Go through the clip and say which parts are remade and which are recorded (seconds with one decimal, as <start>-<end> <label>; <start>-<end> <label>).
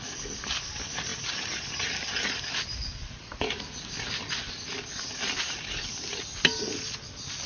0.0-7.5 recorded